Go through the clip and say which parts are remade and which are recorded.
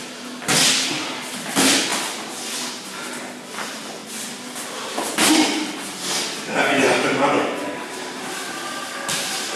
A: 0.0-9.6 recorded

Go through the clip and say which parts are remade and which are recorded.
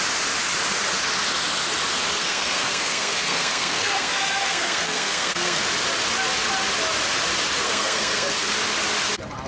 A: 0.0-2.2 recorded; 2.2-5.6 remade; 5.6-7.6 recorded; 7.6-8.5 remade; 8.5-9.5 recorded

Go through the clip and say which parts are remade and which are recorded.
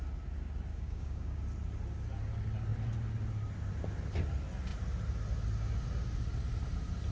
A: 0.0-0.7 recorded; 0.7-1.4 remade; 1.4-7.1 recorded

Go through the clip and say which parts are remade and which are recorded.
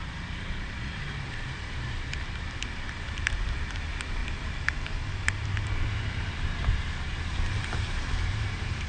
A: 0.0-4.2 remade; 4.2-6.1 recorded; 6.1-8.9 remade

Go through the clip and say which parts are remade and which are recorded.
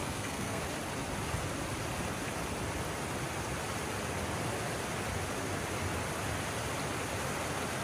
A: 0.0-0.6 remade; 0.6-7.8 recorded